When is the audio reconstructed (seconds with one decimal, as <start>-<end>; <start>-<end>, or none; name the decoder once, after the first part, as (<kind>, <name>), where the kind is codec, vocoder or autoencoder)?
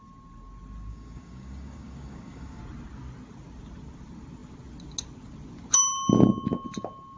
0.9-2.6 (codec, DAC)